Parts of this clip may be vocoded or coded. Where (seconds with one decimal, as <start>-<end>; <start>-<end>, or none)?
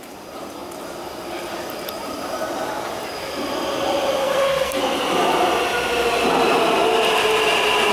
4.2-4.8